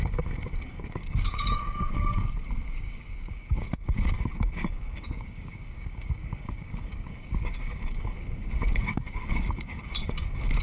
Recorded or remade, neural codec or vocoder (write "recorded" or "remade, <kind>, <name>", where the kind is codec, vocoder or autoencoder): remade, codec, DAC